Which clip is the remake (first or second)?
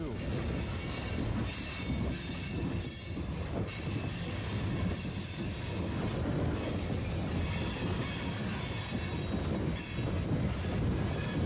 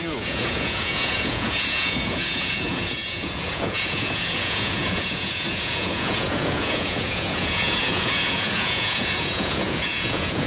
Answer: second